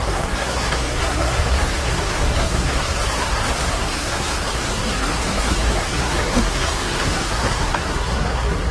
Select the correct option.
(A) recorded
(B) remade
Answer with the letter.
B